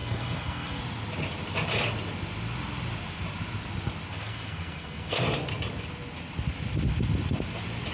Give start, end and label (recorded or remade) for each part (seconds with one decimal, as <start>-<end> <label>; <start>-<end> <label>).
0.0-0.8 remade; 0.8-4.1 recorded; 4.1-5.2 remade; 5.2-7.9 recorded